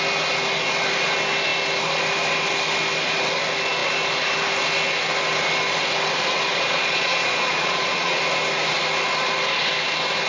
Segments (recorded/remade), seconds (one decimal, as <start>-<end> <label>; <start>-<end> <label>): 0.0-6.5 recorded; 6.5-8.2 remade; 8.2-10.3 recorded